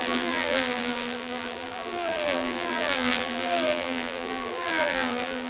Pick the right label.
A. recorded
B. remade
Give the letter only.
B